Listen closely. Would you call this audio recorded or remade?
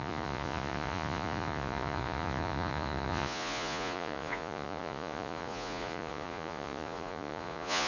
remade